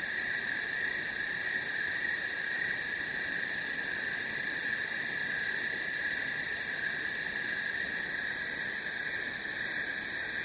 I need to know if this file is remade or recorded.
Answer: recorded